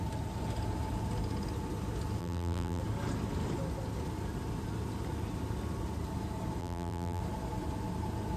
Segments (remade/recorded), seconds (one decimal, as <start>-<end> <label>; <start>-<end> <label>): 0.0-2.2 recorded; 2.2-2.8 remade; 2.8-6.6 recorded; 6.6-7.2 remade; 7.2-8.4 recorded